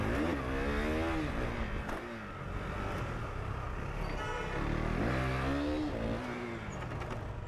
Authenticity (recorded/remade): recorded